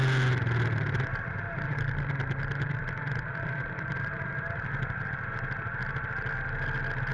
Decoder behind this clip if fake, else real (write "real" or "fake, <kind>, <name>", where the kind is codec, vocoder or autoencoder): real